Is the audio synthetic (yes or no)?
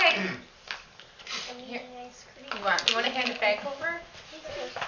no